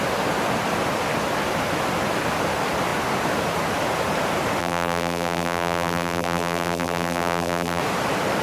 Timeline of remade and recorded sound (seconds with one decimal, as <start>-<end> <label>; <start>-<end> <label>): 0.0-4.6 recorded; 4.6-7.8 remade; 7.8-8.4 recorded